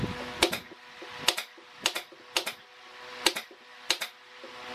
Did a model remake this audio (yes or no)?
no